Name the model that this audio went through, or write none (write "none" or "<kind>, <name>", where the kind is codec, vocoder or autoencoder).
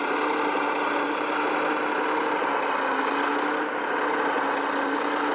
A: none